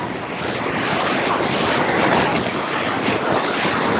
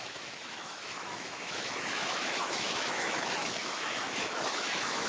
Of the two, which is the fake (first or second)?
second